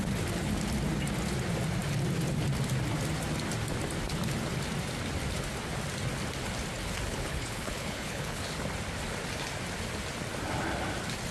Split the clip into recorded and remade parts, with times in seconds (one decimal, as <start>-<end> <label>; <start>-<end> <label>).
0.0-7.1 recorded; 7.1-8.5 remade; 8.5-11.3 recorded